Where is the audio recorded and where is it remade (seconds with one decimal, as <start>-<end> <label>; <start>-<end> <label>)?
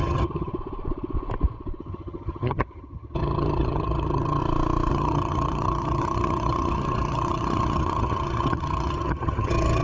0.0-0.5 remade; 0.5-1.8 recorded; 1.8-4.4 remade; 4.4-4.9 recorded; 4.9-9.8 remade